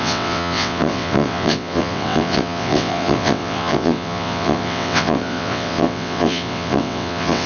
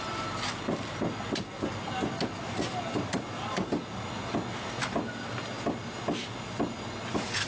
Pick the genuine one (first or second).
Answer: second